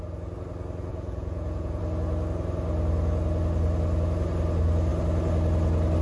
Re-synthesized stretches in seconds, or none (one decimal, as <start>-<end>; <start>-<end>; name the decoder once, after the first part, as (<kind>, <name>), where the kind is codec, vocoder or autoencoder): 0.9-1.8 (vocoder, Vocos)